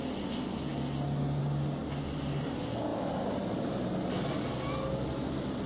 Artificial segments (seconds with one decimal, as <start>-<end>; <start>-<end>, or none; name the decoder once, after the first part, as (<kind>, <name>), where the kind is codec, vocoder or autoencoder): none